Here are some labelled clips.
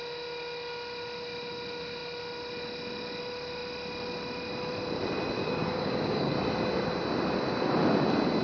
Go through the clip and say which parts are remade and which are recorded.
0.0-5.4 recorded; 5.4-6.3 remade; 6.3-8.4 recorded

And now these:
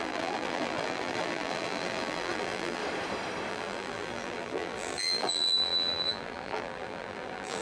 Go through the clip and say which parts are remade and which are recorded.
0.0-2.8 remade; 2.8-3.5 recorded; 3.5-7.6 remade

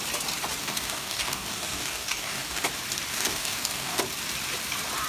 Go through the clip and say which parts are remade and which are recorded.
0.0-0.6 recorded; 0.6-2.6 remade; 2.6-3.1 recorded; 3.1-4.0 remade; 4.0-5.1 recorded

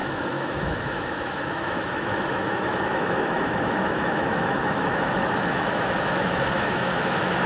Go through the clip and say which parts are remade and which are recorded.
0.0-7.5 remade